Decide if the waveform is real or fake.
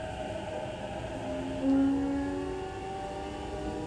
real